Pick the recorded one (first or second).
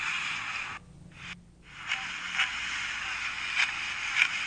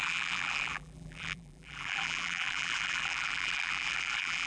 first